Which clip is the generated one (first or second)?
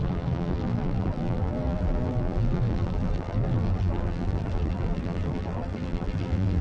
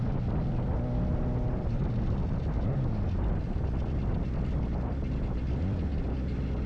first